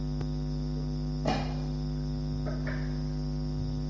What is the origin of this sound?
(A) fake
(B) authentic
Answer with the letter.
B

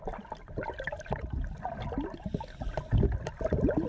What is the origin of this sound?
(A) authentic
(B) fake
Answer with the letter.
A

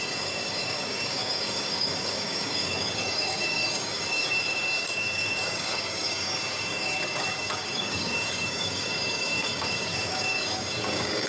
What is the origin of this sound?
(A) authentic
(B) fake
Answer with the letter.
B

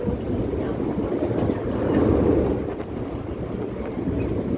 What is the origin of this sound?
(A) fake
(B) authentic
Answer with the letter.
B